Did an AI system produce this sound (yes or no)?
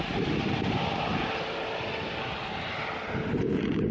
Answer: no